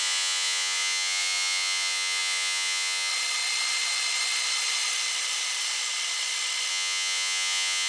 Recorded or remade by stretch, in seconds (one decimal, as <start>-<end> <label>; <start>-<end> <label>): 0.0-3.1 remade; 3.1-6.7 recorded; 6.7-7.9 remade